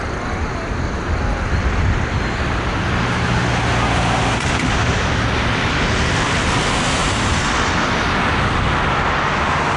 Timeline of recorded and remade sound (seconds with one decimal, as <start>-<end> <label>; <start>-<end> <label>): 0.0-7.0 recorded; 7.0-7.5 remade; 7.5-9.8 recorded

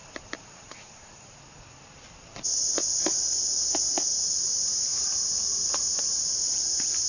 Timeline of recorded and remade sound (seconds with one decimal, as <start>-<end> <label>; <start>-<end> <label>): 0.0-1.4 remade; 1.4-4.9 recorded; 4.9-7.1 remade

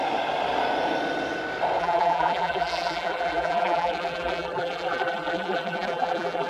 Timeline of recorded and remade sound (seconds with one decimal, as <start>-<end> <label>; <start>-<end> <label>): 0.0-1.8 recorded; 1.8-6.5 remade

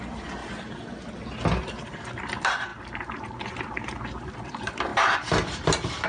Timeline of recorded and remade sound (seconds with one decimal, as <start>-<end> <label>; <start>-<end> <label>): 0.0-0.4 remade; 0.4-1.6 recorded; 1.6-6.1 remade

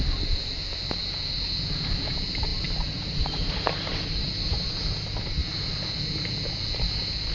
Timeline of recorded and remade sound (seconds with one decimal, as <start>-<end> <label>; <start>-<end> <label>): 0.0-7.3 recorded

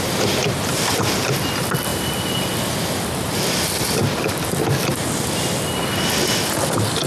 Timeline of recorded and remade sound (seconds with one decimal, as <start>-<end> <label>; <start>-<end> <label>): 0.0-1.9 recorded; 1.9-2.5 remade; 2.5-7.1 recorded

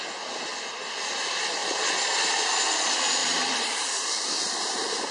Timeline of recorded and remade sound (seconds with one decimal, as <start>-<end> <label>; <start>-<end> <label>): 0.0-3.2 recorded; 3.2-5.1 remade